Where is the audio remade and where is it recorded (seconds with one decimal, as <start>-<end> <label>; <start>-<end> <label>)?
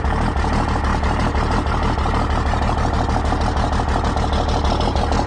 0.0-5.3 recorded